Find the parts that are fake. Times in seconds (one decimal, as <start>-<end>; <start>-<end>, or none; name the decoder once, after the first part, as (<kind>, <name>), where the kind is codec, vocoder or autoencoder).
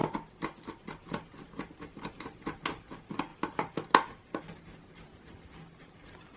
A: none